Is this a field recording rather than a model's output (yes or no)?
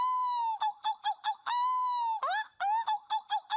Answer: yes